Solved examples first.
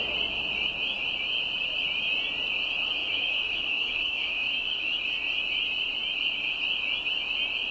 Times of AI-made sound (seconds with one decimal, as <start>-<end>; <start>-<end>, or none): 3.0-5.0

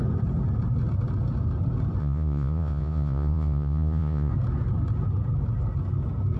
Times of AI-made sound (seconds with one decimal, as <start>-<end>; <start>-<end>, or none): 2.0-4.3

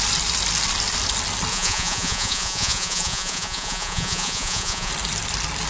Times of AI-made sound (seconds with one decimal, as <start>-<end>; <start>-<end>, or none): 1.5-4.9

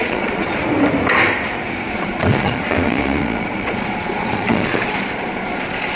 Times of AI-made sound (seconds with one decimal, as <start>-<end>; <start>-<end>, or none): 0.0-0.6; 1.9-6.0

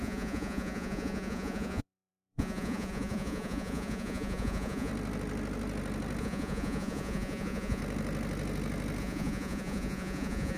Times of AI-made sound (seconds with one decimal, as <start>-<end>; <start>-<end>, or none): 0.0-4.9; 6.2-7.8; 9.0-10.6